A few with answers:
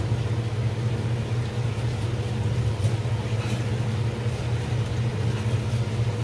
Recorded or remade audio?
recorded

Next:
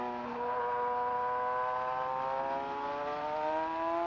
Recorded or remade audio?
recorded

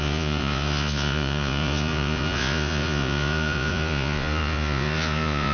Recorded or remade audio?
remade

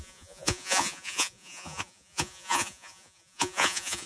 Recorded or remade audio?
remade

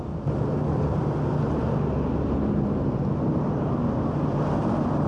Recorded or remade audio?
recorded